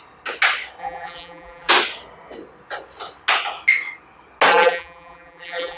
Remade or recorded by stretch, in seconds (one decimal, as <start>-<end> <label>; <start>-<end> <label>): 0.0-0.8 recorded; 0.8-1.7 remade; 1.7-4.5 recorded; 4.5-5.8 remade